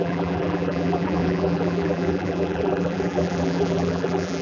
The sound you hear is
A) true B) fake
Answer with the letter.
B